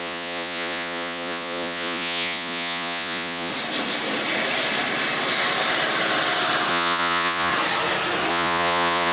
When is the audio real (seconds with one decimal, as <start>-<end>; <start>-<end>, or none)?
3.5-6.7; 7.5-8.3